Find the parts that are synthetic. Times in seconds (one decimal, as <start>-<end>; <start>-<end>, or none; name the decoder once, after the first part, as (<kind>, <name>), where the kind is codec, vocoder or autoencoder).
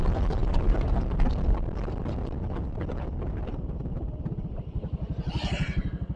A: 0.4-1.0 (vocoder, BigVGAN v2)